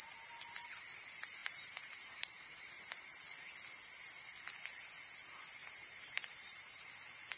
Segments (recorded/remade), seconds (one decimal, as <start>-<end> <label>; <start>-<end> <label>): 0.0-1.4 recorded; 1.4-3.2 remade; 3.2-5.6 recorded; 5.6-6.9 remade; 6.9-7.4 recorded